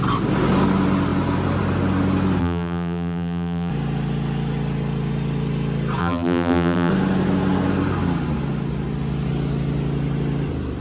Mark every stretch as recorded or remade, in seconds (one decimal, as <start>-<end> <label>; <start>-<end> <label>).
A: 0.0-2.4 recorded; 2.4-3.7 remade; 3.7-6.0 recorded; 6.0-6.9 remade; 6.9-10.8 recorded